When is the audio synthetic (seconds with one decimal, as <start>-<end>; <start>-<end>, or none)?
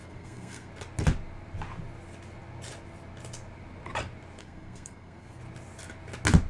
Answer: 0.0-0.7; 4.4-5.4